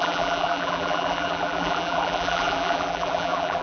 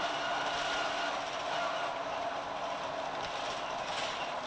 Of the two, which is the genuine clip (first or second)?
second